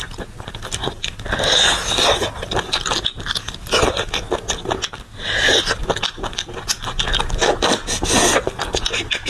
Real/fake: real